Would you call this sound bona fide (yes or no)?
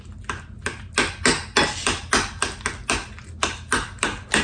yes